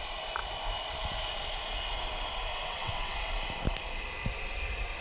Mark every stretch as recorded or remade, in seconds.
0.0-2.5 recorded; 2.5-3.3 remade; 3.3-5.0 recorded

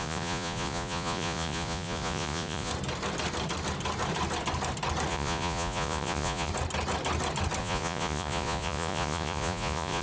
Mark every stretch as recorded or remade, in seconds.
0.0-2.7 remade; 2.7-5.1 recorded; 5.1-6.5 remade; 6.5-7.6 recorded; 7.6-10.0 remade

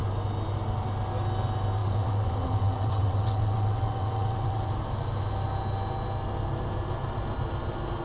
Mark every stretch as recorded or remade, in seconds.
0.0-1.8 recorded; 1.8-4.7 remade; 4.7-8.0 recorded

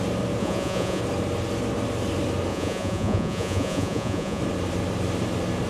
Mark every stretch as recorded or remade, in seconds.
0.0-0.4 recorded; 0.4-1.0 remade; 1.0-2.5 recorded; 2.5-4.4 remade; 4.4-5.7 recorded